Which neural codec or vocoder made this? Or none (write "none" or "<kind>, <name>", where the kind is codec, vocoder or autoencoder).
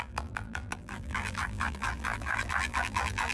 vocoder, BigVGAN v2